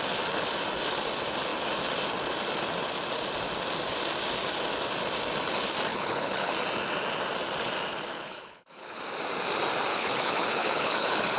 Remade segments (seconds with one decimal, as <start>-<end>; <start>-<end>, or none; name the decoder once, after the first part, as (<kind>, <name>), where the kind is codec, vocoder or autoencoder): 5.9-6.5 (codec, HILCodec); 8.1-9.0; 9.9-11.4